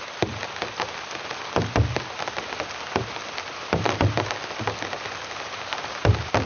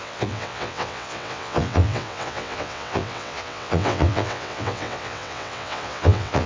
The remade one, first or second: second